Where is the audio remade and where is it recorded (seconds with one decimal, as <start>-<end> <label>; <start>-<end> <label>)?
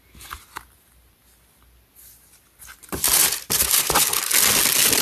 0.0-5.0 recorded